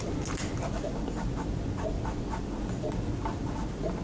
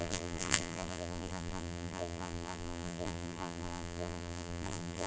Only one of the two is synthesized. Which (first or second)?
second